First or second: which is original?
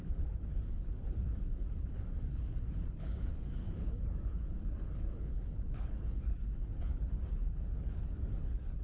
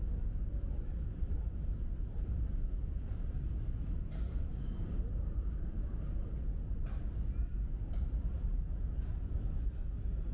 second